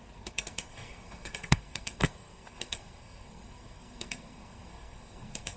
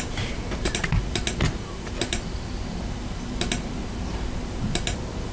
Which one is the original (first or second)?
second